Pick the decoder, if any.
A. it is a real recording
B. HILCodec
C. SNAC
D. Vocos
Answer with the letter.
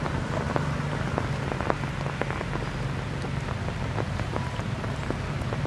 A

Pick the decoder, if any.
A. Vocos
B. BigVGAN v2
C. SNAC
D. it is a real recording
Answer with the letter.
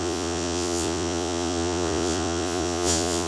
A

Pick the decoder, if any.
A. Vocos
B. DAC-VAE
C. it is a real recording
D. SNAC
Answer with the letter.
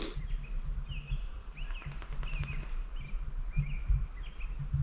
C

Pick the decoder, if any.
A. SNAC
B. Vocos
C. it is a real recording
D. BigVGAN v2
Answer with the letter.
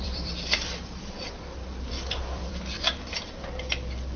D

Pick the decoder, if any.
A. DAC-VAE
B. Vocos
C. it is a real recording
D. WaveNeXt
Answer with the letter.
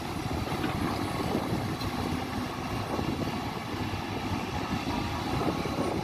C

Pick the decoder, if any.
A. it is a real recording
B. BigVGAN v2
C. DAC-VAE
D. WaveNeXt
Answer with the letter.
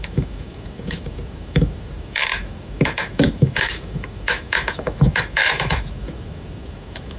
C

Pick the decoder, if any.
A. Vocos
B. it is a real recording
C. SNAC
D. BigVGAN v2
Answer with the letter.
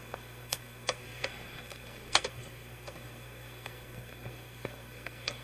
C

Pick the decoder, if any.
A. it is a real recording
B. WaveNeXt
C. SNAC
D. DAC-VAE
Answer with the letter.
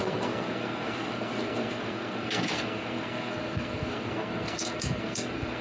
C